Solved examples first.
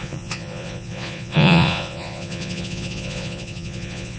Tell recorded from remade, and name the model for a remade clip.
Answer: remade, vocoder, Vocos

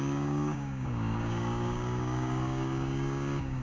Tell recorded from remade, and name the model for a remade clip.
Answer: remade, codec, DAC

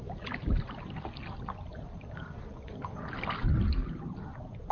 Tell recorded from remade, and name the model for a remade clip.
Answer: recorded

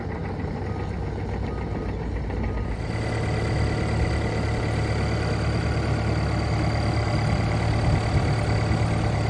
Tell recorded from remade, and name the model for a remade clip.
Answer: recorded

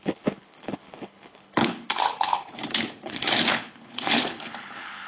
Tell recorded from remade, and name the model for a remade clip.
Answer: remade, codec, HILCodec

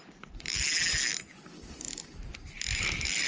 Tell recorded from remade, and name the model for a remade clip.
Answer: recorded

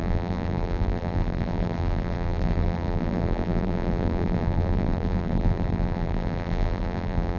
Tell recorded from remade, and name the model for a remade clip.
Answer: remade, vocoder, BigVGAN v2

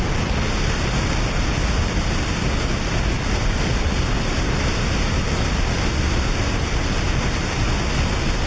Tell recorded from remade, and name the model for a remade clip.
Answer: recorded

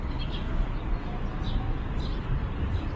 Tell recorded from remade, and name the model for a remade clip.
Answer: recorded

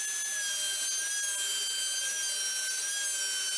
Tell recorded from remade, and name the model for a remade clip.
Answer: recorded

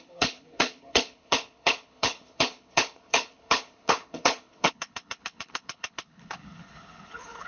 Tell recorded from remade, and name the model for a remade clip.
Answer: remade, codec, HILCodec